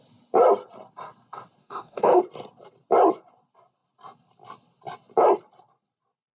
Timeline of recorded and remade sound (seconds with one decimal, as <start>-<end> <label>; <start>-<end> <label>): 0.0-1.6 recorded; 1.6-2.2 remade; 2.2-6.3 recorded